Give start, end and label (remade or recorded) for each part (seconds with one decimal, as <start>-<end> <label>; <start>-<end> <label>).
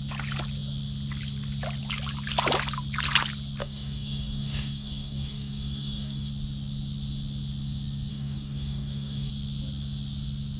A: 0.0-3.6 recorded; 3.6-6.3 remade; 6.3-8.1 recorded; 8.1-9.3 remade; 9.3-10.6 recorded